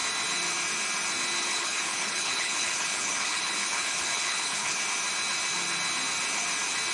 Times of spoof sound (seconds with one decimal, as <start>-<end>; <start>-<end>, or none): 1.5-4.8